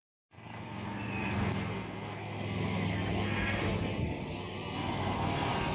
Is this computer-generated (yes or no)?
yes